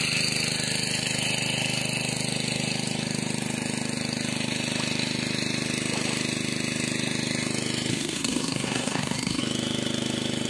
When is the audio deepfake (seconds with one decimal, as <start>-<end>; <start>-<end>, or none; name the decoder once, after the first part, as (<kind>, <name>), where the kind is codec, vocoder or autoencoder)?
7.9-9.4 (codec, SNAC)